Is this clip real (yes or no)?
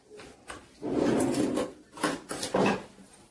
yes